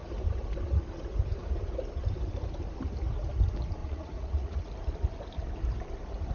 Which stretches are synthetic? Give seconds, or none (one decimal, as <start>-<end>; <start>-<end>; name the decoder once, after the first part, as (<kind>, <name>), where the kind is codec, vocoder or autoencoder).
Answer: 3.8-4.7 (vocoder, Vocos)